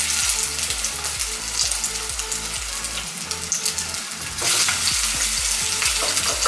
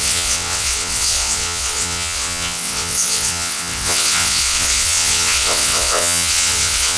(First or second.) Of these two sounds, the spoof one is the second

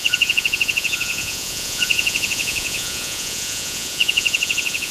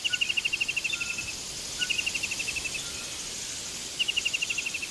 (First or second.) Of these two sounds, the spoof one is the first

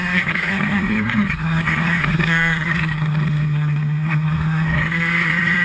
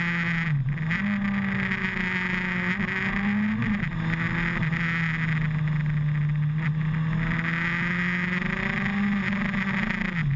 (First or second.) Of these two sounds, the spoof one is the first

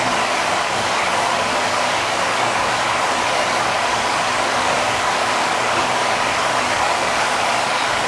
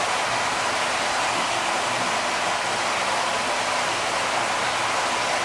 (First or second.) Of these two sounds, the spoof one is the first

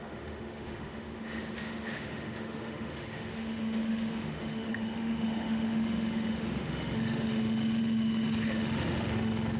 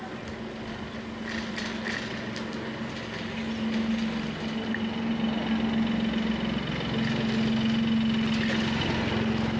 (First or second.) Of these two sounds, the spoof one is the first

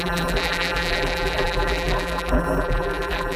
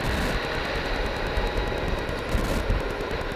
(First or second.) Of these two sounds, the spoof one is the first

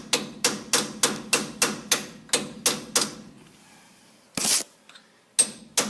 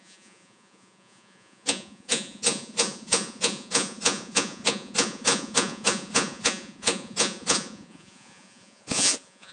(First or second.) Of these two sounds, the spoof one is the second